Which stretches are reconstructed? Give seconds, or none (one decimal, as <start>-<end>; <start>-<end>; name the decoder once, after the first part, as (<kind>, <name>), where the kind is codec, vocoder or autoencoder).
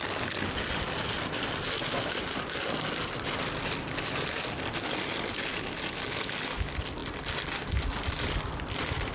none